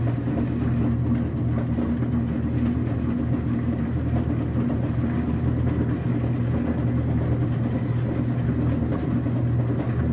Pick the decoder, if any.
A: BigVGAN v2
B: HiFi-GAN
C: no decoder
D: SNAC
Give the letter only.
C